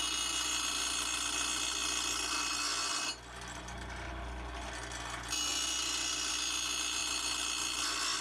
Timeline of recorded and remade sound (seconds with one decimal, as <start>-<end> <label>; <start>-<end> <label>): 0.0-8.2 recorded